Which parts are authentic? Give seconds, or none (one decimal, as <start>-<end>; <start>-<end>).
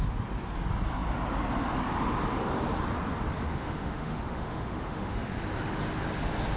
0.0-3.5; 5.3-6.6